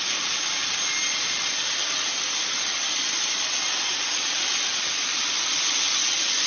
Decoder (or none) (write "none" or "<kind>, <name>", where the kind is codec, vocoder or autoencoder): none